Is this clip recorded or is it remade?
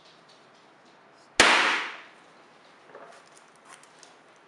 recorded